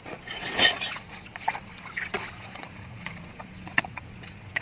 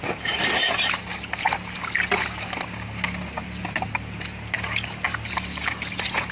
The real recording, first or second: second